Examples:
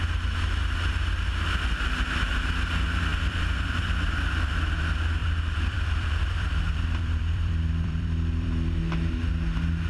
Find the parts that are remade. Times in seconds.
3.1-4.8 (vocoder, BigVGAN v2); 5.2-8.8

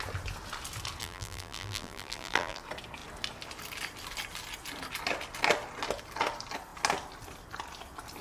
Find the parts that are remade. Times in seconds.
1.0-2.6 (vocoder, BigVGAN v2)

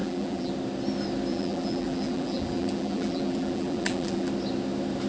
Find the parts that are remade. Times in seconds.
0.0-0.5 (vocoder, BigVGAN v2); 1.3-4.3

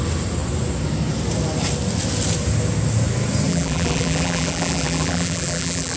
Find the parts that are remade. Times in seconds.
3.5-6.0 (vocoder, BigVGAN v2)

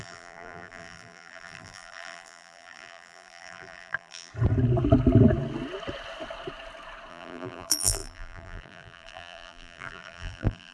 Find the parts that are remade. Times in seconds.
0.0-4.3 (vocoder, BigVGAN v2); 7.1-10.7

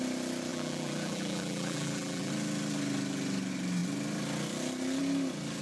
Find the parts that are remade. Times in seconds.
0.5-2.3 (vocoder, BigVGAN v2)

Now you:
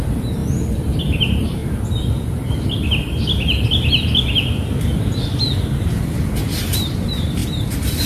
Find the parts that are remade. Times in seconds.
0.0-0.4 (vocoder, BigVGAN v2); 1.0-1.6; 6.3-7.4

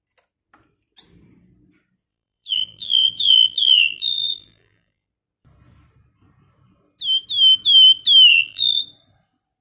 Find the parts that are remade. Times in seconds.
2.1-5.1 (vocoder, BigVGAN v2); 8.3-8.8